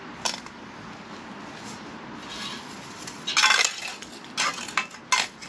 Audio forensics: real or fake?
real